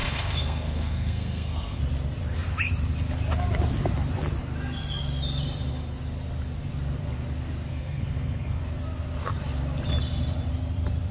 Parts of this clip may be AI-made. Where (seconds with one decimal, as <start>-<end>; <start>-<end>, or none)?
0.0-1.8; 7.7-8.6